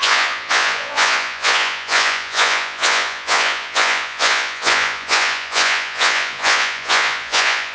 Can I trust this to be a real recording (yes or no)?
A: no